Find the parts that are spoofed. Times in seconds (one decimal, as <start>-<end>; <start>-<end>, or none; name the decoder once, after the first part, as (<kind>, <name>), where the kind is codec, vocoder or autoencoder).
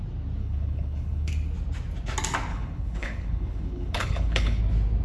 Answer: 0.4-1.3 (codec, HILCodec); 2.5-4.6